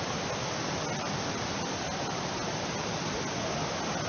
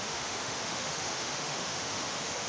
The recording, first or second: first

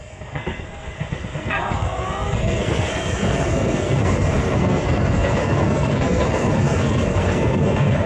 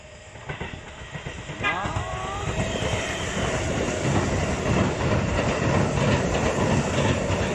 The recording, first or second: second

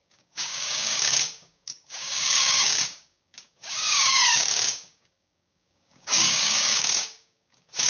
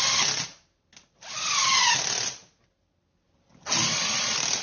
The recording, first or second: second